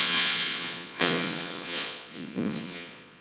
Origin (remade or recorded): remade